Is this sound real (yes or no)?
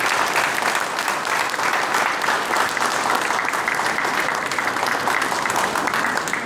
yes